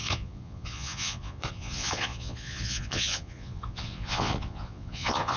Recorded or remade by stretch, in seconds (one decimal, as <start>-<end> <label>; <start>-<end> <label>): 0.0-5.4 remade